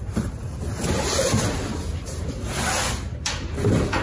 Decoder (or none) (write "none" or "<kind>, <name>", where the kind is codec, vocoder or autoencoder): vocoder, BigVGAN v2